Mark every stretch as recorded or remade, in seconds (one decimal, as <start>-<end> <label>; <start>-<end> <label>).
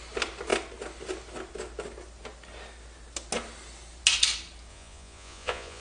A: 0.0-4.7 recorded; 4.7-5.8 remade